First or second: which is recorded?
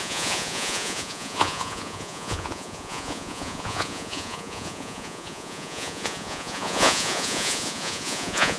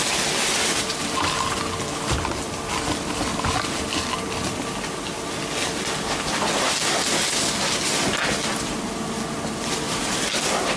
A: second